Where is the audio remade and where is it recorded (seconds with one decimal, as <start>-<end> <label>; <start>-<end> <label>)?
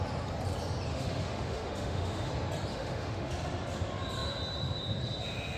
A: 0.0-0.9 recorded; 0.9-2.3 remade; 2.3-2.7 recorded; 2.7-3.3 remade; 3.3-5.6 recorded